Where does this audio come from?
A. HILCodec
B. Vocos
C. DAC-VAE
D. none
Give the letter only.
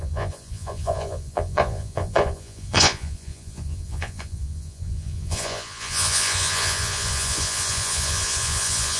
B